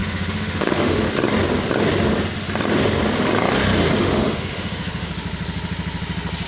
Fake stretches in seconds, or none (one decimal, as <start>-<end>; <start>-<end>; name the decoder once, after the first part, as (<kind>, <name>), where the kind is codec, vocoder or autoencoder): 0.0-1.1 (autoencoder, DAC-VAE); 4.0-5.1